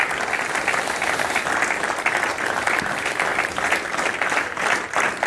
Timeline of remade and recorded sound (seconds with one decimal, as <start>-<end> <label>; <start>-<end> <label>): 0.0-5.3 recorded